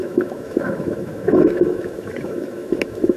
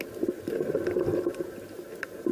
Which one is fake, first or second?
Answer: first